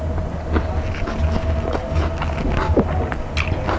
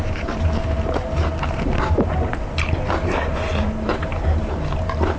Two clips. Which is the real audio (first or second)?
first